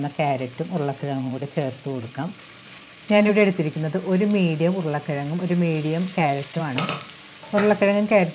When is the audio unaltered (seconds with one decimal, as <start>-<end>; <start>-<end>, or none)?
0.0-1.0; 3.3-6.1; 6.6-8.3